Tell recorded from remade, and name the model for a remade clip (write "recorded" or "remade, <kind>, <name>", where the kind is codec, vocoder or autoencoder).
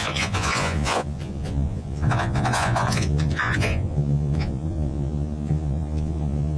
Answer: remade, vocoder, Vocos